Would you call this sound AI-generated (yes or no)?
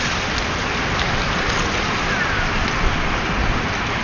no